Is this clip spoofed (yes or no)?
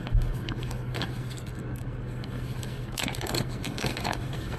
yes